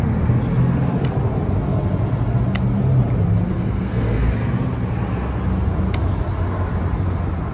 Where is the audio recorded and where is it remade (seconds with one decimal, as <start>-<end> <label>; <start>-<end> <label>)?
0.0-3.5 recorded; 3.5-4.3 remade; 4.3-7.5 recorded